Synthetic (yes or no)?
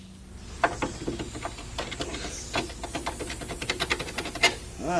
no